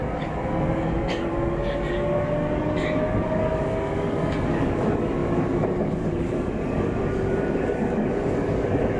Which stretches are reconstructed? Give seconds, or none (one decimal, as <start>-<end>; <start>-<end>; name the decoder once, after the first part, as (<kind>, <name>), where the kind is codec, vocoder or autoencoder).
0.0-9.0 (codec, DAC)